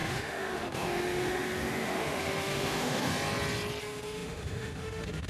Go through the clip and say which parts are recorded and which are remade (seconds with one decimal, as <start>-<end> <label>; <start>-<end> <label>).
0.0-3.1 remade; 3.1-3.8 recorded; 3.8-5.3 remade